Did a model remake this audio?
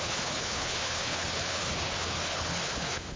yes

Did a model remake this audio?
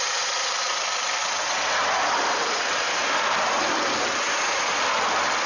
no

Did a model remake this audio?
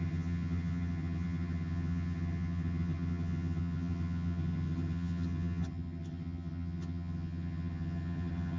yes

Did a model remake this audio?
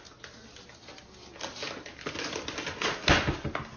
no